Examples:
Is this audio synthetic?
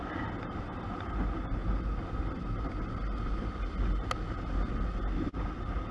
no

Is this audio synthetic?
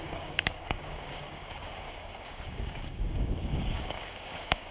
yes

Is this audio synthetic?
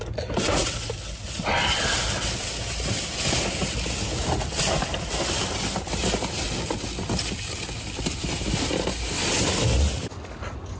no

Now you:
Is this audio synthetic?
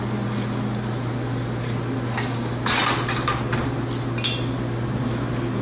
no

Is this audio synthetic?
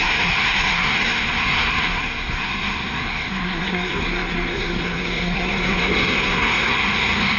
yes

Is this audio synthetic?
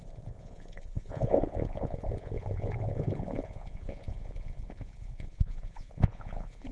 yes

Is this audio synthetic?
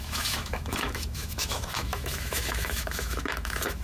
yes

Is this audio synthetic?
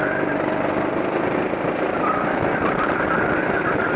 no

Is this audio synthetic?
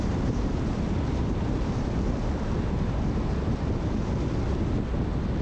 no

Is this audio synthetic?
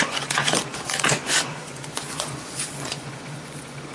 yes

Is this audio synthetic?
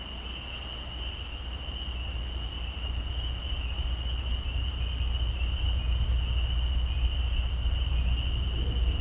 no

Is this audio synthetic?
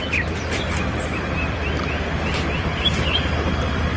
yes